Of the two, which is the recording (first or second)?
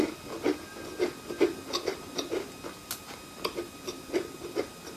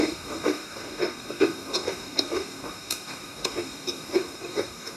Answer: first